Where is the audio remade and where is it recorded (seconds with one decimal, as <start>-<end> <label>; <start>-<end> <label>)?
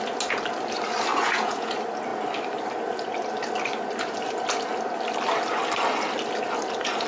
0.0-1.1 recorded; 1.1-1.7 remade; 1.7-7.1 recorded